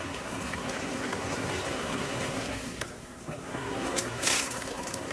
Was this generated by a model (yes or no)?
yes